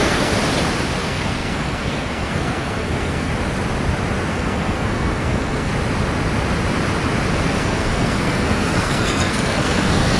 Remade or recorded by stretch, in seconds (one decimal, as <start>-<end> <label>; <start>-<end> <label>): 0.0-0.4 remade; 0.4-1.0 recorded; 1.0-3.3 remade; 3.3-4.3 recorded; 4.3-5.7 remade; 5.7-7.3 recorded; 7.3-10.2 remade